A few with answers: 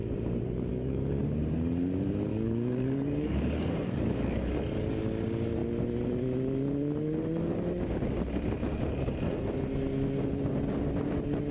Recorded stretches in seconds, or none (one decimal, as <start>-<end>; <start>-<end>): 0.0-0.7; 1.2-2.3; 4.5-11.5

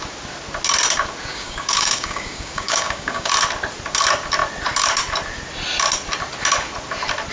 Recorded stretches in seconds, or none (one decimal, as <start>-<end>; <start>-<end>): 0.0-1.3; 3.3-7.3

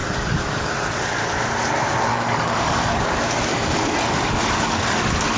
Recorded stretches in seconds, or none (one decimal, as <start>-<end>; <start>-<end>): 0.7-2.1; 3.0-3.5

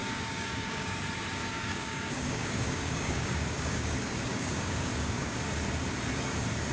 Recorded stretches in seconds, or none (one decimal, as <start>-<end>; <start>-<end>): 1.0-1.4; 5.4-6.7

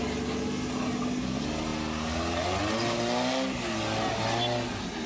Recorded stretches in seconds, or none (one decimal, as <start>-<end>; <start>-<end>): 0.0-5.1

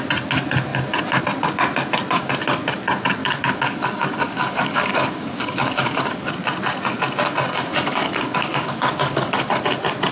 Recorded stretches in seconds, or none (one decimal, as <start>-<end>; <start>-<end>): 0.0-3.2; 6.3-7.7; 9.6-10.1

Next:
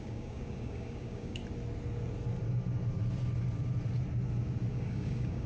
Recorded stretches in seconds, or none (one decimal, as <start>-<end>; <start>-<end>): 1.4-4.7

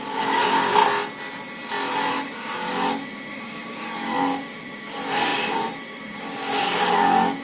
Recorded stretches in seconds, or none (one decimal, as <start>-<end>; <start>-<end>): 0.8-2.1